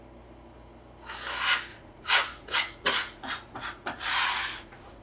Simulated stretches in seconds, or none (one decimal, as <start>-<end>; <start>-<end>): 1.7-5.0